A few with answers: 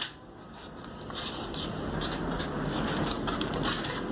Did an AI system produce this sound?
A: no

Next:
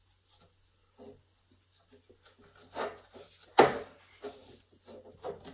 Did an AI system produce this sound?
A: no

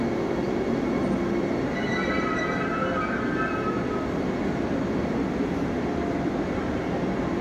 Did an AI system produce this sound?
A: no